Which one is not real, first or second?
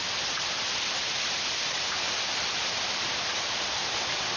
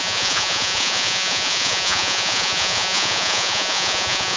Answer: second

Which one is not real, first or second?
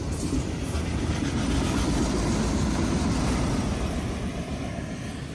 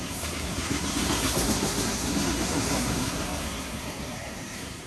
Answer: second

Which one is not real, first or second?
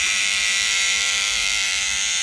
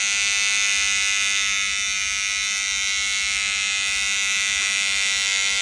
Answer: first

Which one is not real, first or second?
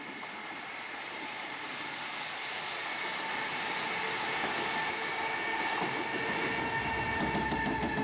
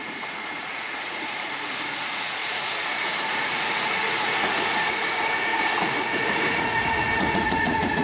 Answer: second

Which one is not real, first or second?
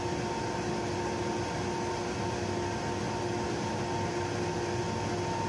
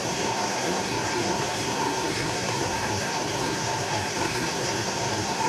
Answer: second